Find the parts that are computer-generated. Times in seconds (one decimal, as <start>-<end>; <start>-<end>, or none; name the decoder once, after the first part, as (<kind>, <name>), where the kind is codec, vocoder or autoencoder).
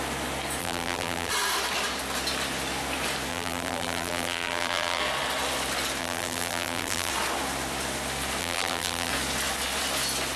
0.6-1.3 (vocoder, BigVGAN v2); 3.3-5.0; 6.0-7.1; 8.4-9.1